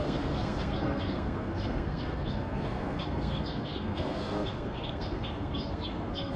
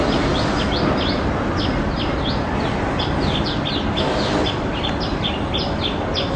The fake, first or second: first